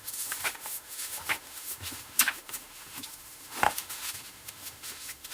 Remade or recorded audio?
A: remade